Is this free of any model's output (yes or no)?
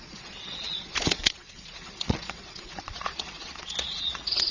no